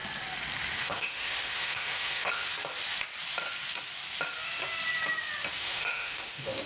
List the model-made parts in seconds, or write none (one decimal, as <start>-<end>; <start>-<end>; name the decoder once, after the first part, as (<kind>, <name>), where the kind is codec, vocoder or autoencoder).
0.8-2.4 (autoencoder, DAC-VAE); 5.6-6.7